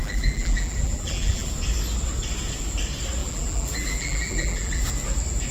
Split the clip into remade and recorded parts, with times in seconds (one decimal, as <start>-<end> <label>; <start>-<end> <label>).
0.0-1.5 remade; 1.5-3.2 recorded; 3.2-4.8 remade; 4.8-5.5 recorded